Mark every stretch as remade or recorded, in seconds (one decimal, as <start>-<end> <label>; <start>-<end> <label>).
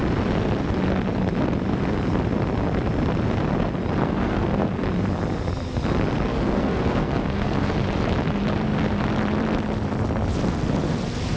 0.0-4.0 recorded; 4.0-4.8 remade; 4.8-6.3 recorded; 6.3-7.7 remade; 7.7-11.4 recorded